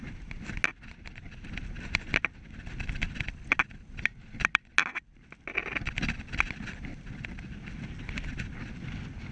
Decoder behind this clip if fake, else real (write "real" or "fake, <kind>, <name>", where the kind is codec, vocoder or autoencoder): real